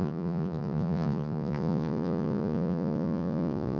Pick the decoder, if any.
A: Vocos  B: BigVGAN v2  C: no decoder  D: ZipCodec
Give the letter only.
A